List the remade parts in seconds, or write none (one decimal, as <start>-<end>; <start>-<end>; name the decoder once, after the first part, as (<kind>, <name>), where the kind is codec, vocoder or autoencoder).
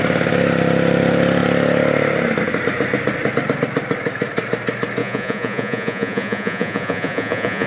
5.0-7.7 (vocoder, Vocos)